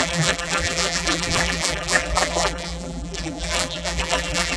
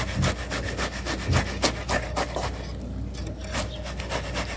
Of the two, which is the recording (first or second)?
second